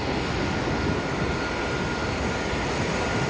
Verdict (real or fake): real